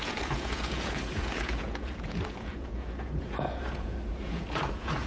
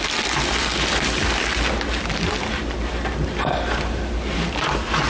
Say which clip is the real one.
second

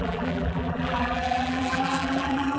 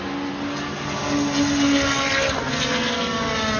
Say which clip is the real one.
second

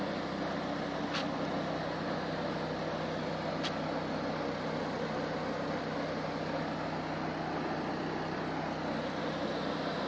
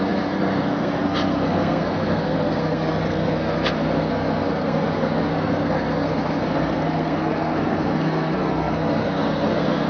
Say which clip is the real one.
first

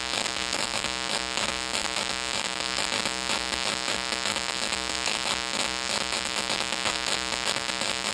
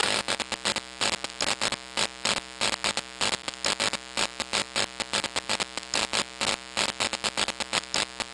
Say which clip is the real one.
second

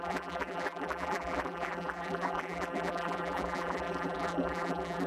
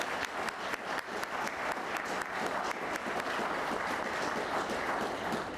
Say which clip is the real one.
second